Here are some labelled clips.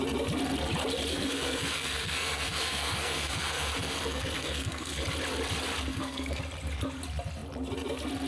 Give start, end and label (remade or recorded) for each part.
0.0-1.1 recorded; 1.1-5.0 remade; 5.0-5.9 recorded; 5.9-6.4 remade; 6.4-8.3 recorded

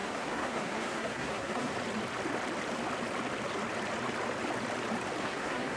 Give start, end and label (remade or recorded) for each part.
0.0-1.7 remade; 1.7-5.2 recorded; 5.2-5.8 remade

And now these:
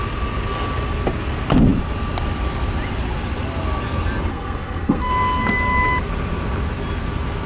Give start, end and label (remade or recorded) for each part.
0.0-4.3 recorded; 4.3-5.1 remade; 5.1-7.5 recorded

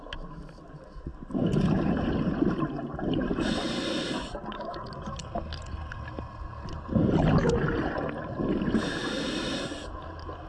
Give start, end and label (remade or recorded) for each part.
0.0-10.5 recorded

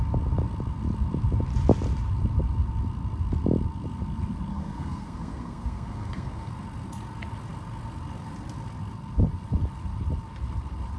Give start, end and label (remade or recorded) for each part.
0.0-4.5 recorded; 4.5-6.5 remade; 6.5-11.0 recorded

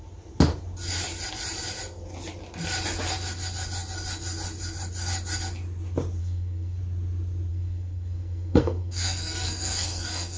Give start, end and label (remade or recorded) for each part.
0.0-6.2 recorded; 6.2-6.8 remade; 6.8-7.5 recorded; 7.5-10.4 remade